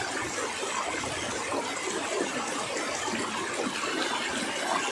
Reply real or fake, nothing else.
real